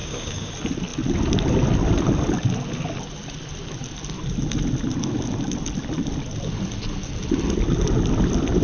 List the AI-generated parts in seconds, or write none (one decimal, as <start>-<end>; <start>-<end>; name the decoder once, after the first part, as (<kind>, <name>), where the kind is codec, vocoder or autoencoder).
0.0-0.5 (codec, DAC)